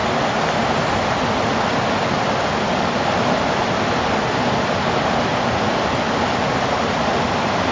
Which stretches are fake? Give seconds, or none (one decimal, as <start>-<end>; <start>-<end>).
none